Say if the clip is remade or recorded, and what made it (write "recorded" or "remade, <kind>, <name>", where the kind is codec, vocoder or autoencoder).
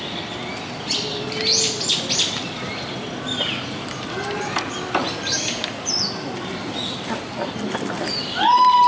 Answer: recorded